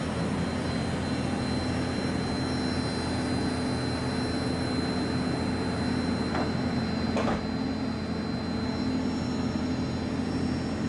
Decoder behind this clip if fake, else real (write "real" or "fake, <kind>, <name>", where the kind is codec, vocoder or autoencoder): real